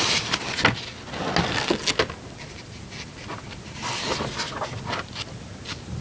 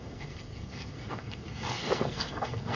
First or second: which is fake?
second